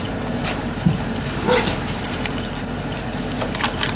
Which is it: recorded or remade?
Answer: remade